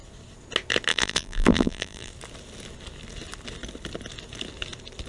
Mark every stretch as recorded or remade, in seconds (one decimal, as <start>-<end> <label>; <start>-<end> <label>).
0.0-0.9 recorded; 0.9-2.1 remade; 2.1-5.1 recorded